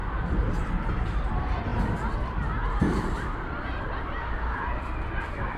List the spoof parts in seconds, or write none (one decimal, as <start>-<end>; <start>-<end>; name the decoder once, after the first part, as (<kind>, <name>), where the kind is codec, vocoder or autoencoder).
0.0-5.6 (vocoder, BigVGAN v2)